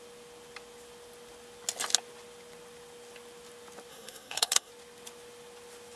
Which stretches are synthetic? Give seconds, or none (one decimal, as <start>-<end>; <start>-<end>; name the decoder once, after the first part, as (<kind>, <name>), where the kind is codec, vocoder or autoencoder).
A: 3.9-4.7 (codec, SNAC)